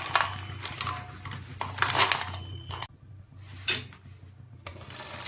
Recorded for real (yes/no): yes